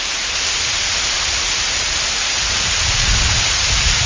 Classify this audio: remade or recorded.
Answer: remade